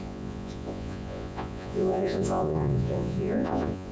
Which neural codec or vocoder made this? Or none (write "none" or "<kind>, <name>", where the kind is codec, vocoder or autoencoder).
vocoder, Vocos